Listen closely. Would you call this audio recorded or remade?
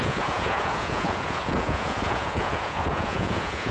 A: remade